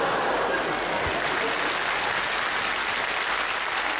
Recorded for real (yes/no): yes